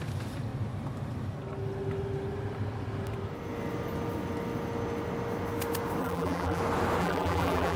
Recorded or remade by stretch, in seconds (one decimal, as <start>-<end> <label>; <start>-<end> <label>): 0.0-6.0 recorded; 6.0-6.6 remade; 6.6-7.0 recorded; 7.0-7.8 remade

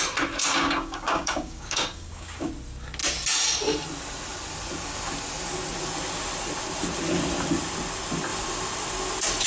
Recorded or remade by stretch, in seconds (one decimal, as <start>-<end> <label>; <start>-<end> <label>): 0.0-0.4 recorded; 0.4-2.5 remade; 2.5-9.5 recorded

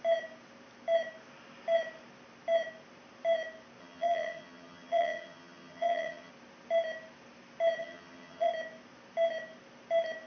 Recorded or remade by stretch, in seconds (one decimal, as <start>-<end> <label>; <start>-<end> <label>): 0.0-3.8 recorded; 3.8-6.3 remade; 6.3-7.8 recorded; 7.8-8.5 remade; 8.5-10.3 recorded

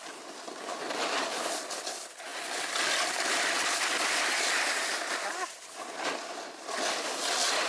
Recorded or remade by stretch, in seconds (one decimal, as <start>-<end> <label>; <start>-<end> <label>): 0.0-7.7 recorded

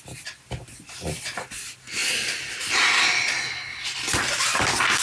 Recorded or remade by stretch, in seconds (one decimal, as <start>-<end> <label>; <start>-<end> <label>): 0.0-5.0 recorded

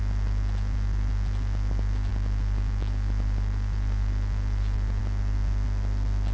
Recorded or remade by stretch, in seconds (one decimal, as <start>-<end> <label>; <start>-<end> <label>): 0.0-2.1 recorded; 2.1-5.0 remade; 5.0-6.3 recorded

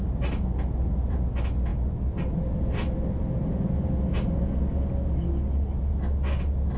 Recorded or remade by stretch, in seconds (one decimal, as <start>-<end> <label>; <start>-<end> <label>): 0.0-6.8 recorded

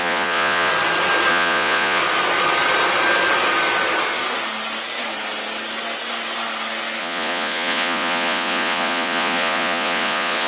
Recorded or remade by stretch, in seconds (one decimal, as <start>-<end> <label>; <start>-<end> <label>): 0.0-0.7 remade; 0.7-1.3 recorded; 1.3-2.0 remade; 2.0-7.0 recorded; 7.0-10.5 remade